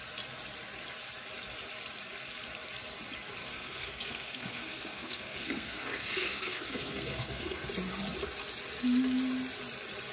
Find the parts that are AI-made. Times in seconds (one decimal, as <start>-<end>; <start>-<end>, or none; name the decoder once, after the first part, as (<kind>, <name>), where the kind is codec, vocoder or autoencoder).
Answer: 3.4-7.7 (codec, SNAC)